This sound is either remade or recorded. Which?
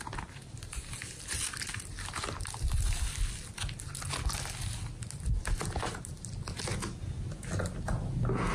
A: recorded